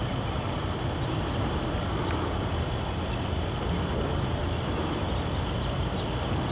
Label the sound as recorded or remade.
recorded